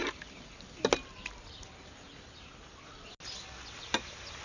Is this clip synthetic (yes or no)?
no